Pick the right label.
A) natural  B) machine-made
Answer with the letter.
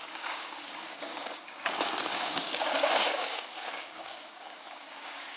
B